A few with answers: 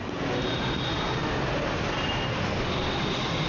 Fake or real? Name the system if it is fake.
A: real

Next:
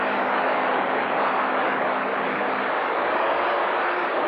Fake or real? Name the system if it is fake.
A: fake, codec, DAC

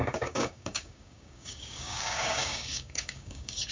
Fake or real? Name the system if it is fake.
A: fake, codec, DAC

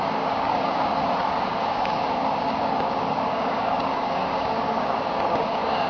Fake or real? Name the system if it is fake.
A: fake, codec, DAC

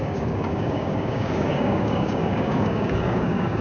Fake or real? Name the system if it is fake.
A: fake, codec, DAC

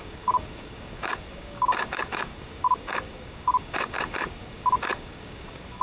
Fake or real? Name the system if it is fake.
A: fake, codec, DAC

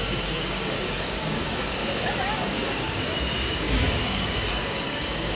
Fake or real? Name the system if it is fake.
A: fake, codec, DAC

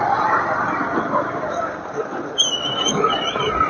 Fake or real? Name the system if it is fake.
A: real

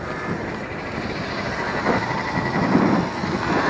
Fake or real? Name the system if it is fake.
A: real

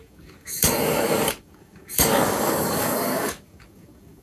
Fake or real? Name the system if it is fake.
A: fake, codec, DAC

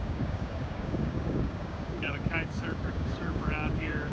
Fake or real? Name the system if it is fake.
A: fake, codec, DAC